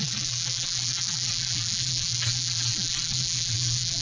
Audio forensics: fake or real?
fake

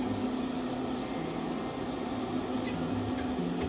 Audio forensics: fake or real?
real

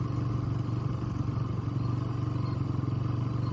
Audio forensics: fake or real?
real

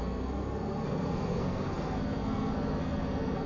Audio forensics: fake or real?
fake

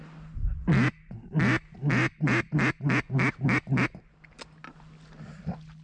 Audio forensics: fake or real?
real